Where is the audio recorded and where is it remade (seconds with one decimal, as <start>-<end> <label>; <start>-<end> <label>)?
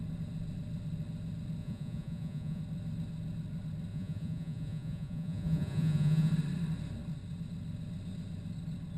0.0-1.6 recorded; 1.6-2.6 remade; 2.6-3.9 recorded; 3.9-6.3 remade; 6.3-9.0 recorded